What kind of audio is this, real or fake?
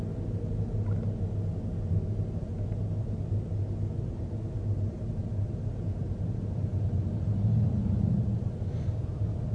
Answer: real